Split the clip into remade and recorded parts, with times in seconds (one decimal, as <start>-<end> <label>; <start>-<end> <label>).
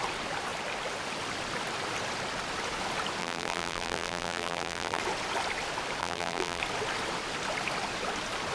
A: 0.0-3.2 recorded; 3.2-5.0 remade; 5.0-6.0 recorded; 6.0-6.6 remade; 6.6-8.5 recorded